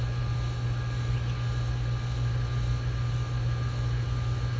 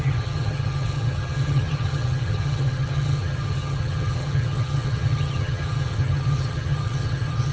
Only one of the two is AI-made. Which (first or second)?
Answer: second